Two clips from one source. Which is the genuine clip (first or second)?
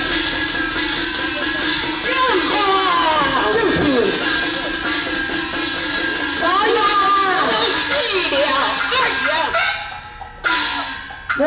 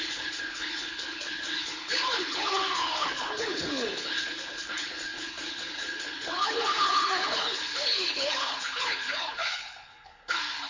first